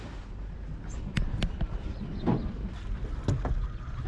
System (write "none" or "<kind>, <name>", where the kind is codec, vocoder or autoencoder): none